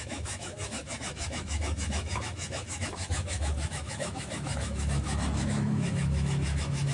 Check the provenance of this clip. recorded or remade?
remade